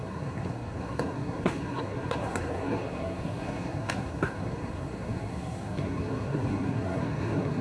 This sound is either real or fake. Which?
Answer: fake